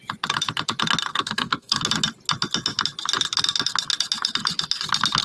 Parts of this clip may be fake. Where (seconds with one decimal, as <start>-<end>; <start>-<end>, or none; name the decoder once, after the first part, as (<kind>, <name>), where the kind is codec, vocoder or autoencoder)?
1.1-1.8 (codec, SNAC)